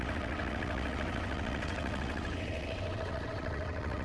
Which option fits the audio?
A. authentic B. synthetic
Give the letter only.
B